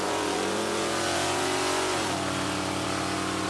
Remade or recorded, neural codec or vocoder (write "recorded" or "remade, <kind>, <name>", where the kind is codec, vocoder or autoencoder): remade, vocoder, Vocos